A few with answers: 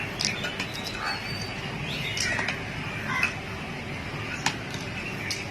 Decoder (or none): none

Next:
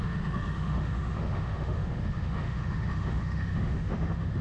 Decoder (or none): autoencoder, DAC-VAE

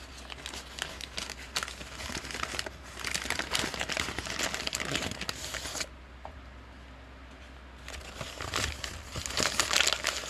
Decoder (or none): none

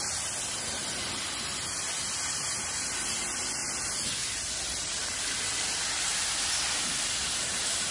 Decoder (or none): none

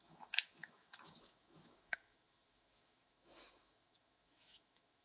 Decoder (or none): autoencoder, DAC-VAE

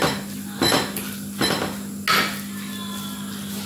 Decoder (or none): none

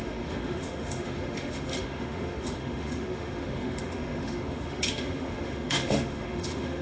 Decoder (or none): autoencoder, DAC-VAE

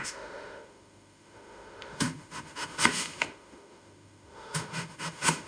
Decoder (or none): autoencoder, DAC-VAE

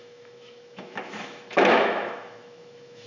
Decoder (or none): autoencoder, DAC-VAE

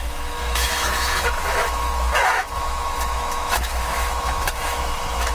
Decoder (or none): autoencoder, DAC-VAE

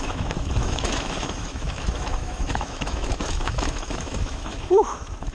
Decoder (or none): autoencoder, DAC-VAE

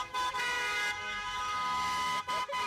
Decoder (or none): autoencoder, DAC-VAE